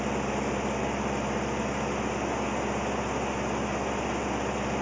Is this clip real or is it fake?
real